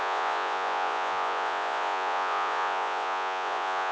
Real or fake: fake